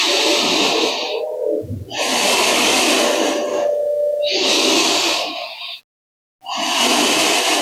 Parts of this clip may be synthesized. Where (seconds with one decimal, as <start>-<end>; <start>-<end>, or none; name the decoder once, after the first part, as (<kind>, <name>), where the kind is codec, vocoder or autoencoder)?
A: 2.1-2.8 (codec, DAC); 3.5-5.8